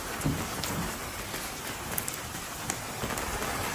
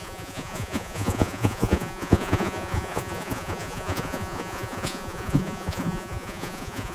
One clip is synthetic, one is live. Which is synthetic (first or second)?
second